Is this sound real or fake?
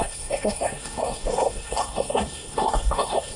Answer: fake